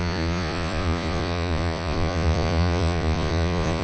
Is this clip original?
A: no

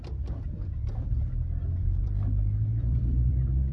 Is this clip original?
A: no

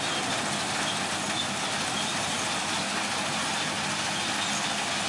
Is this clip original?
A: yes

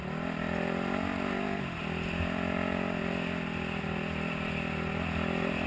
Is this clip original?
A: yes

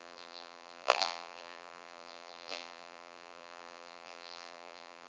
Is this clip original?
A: no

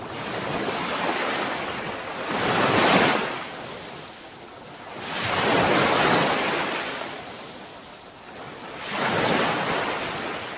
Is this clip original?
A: yes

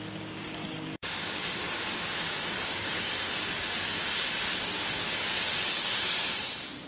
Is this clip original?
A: no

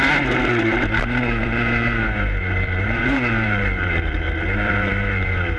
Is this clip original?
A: no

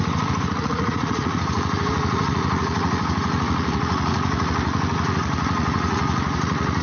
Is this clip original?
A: no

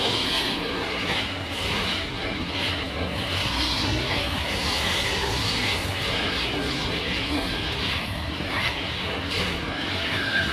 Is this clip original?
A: no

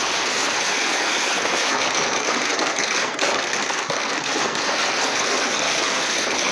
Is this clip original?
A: no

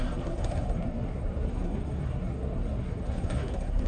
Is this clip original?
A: no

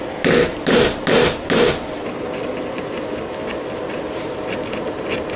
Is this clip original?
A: yes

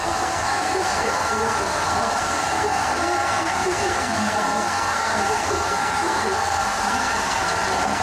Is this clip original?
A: no